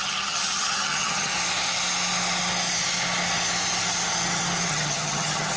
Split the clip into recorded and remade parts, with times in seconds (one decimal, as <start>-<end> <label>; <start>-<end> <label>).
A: 0.0-1.3 remade; 1.3-4.7 recorded; 4.7-5.6 remade